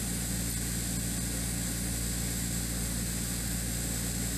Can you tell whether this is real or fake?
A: real